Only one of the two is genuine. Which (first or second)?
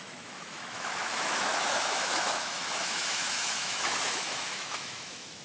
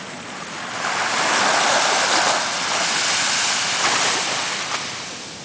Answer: second